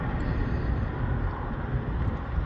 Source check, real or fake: real